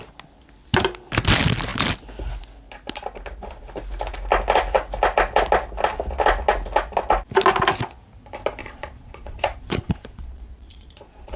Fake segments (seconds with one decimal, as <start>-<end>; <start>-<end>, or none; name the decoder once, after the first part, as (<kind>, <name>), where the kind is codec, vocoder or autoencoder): 8.6-11.4 (vocoder, Vocos)